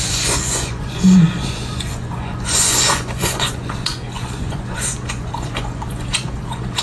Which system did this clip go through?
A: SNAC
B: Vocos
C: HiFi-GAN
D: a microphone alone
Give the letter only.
B